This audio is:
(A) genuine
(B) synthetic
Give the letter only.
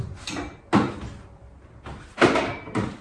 A